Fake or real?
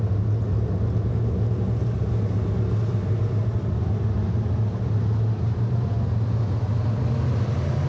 real